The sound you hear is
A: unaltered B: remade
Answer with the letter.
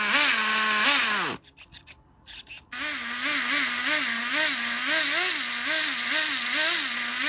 A